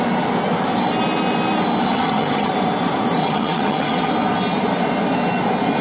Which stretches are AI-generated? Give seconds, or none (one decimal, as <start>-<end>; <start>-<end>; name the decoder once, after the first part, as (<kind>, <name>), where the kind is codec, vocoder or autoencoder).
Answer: 1.8-2.5 (vocoder, HiFi-GAN); 3.2-4.1